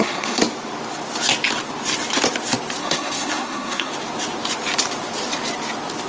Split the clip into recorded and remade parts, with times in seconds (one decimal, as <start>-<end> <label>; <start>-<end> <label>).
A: 0.0-0.4 remade; 0.4-2.8 recorded; 2.8-3.9 remade; 3.9-6.1 recorded